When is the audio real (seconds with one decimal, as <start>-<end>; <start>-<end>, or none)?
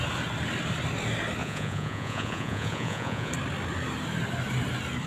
0.0-1.4; 3.3-5.1